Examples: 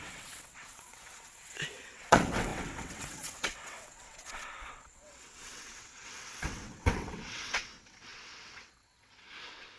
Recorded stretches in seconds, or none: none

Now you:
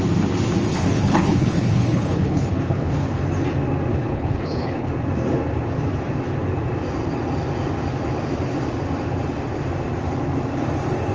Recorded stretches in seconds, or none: 0.0-0.7; 3.2-3.9; 4.9-11.1

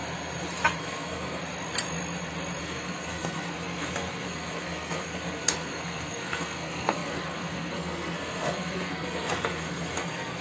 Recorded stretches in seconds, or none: 0.0-0.8; 1.4-2.6

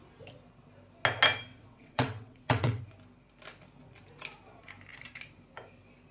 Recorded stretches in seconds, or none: 0.0-1.5; 2.8-6.1

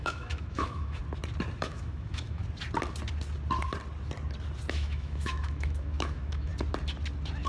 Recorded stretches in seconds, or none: 1.0-1.6; 2.4-4.7; 6.5-7.5